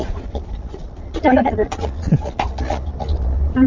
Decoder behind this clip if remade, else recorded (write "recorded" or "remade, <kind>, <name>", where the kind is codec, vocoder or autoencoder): remade, vocoder, Vocos